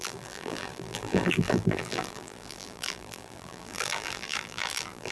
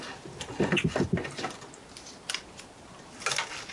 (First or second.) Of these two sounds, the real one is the second